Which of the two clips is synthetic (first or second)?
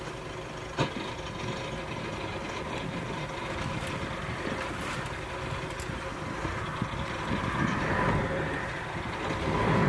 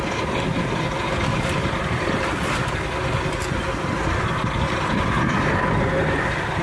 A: second